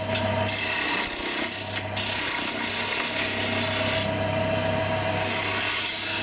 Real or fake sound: real